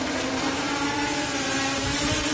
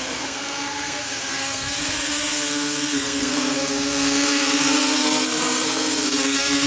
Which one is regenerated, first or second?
second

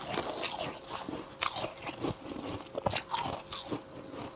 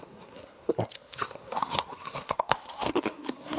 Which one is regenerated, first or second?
second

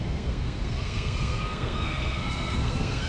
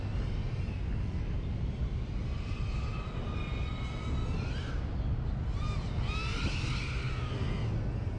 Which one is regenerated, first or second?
first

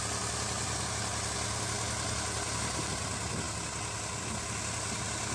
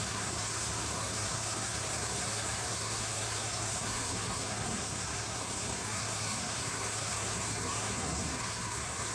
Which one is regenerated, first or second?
second